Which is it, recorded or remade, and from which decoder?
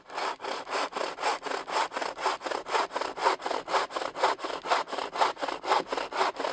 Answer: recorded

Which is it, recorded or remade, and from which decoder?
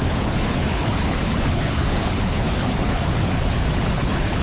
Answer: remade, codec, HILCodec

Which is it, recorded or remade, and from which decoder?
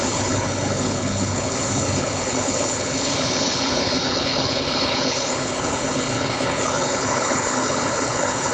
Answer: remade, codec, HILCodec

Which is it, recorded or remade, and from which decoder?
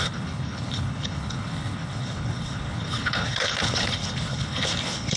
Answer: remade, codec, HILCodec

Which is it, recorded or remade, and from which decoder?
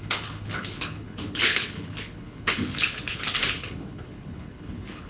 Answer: remade, codec, HILCodec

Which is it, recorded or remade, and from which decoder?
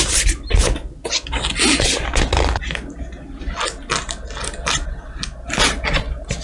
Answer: recorded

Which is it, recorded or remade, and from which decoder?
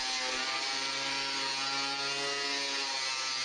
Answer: recorded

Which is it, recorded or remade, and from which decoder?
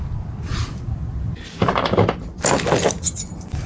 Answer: recorded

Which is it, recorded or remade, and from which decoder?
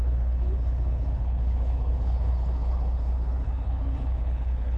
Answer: remade, codec, HILCodec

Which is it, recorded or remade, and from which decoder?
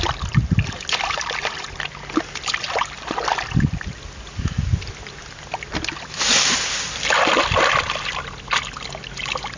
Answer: recorded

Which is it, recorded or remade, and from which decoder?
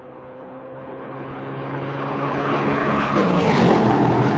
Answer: remade, codec, HILCodec